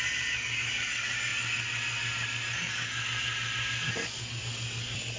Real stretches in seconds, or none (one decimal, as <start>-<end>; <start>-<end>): 0.0-5.2